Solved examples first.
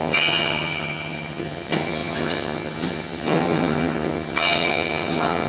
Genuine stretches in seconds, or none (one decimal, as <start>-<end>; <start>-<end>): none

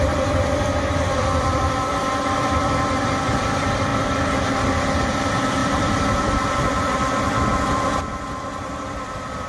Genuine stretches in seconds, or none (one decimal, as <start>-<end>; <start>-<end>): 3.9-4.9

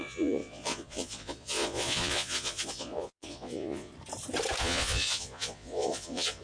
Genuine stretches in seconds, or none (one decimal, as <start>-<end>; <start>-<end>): 3.9-4.6